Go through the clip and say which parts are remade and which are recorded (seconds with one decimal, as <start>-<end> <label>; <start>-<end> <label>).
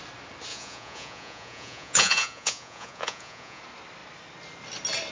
0.0-0.5 recorded; 0.5-3.6 remade; 3.6-5.1 recorded